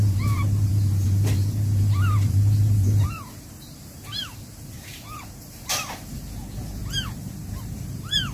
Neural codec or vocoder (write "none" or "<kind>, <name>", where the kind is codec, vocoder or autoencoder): vocoder, BigVGAN v2